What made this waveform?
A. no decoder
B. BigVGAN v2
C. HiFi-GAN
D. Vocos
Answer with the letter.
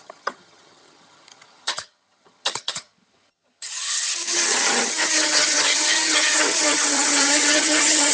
C